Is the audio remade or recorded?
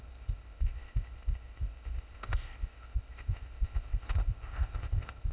remade